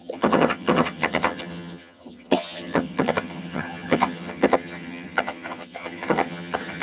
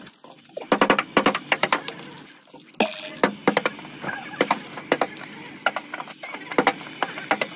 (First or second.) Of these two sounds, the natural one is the second